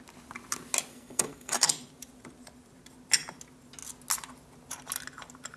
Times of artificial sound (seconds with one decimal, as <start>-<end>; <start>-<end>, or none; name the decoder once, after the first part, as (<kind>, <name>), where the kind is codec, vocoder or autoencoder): 0.9-1.7 (codec, SNAC)